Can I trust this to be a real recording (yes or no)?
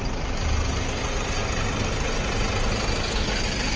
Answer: yes